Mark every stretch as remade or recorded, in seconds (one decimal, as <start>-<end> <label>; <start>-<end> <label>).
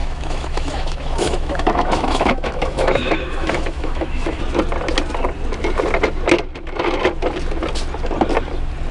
0.0-4.4 remade; 4.4-8.9 recorded